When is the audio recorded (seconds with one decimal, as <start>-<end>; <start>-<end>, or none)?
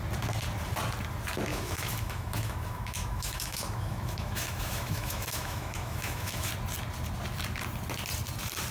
0.0-1.5; 6.5-8.7